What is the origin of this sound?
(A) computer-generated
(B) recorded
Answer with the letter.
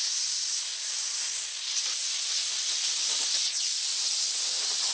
B